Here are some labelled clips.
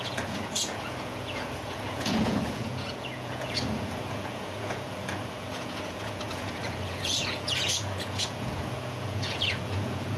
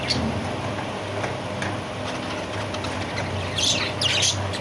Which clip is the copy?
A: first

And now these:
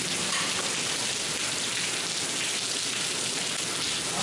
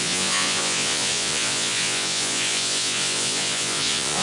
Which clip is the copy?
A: second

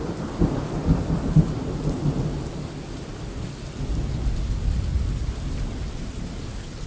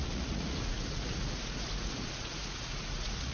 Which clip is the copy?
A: second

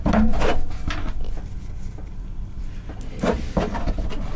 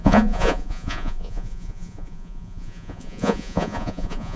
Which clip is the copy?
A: second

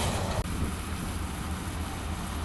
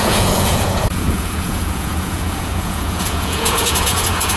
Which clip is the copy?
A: second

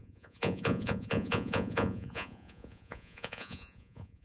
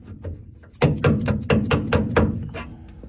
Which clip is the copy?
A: first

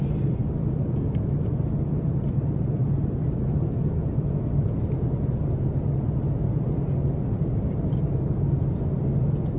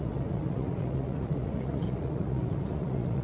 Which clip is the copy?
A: second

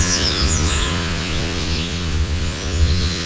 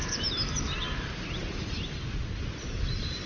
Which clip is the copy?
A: first